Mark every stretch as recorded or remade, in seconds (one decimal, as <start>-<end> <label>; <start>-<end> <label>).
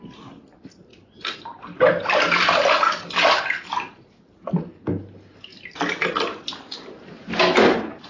0.0-8.1 recorded